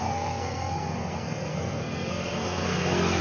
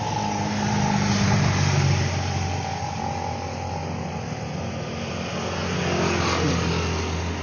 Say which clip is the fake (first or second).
first